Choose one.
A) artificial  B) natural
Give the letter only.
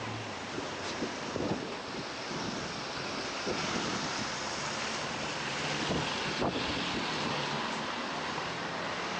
B